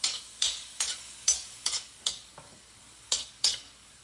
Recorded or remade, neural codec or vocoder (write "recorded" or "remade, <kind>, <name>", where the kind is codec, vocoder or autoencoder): remade, codec, DAC